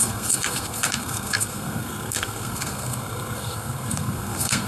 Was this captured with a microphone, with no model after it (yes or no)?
no